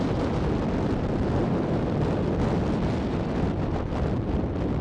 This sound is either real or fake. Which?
real